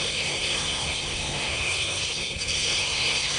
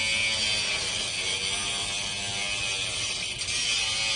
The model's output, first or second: first